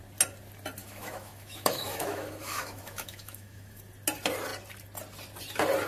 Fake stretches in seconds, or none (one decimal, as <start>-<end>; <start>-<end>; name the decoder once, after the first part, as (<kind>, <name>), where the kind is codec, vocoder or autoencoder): 0.8-3.8 (autoencoder, DAC-VAE)